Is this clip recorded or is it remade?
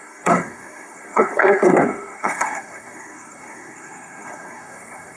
remade